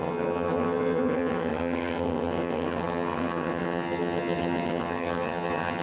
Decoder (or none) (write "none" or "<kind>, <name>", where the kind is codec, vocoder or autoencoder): vocoder, HiFi-GAN